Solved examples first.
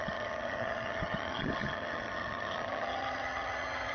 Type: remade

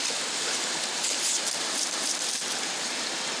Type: recorded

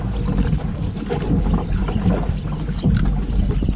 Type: recorded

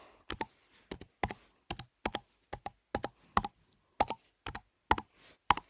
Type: recorded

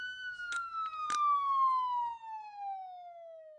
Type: recorded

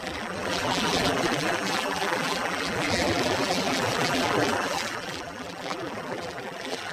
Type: remade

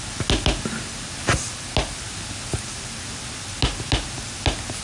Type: recorded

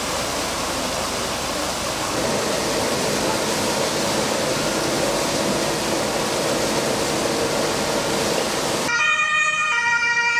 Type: recorded